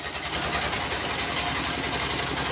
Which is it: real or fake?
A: real